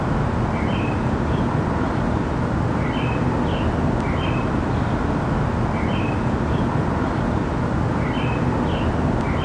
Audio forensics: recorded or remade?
recorded